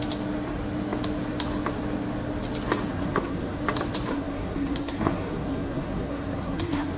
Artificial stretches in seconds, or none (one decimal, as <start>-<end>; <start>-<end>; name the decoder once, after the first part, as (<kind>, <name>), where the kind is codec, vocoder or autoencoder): 2.9-3.6 (codec, SNAC); 4.1-7.0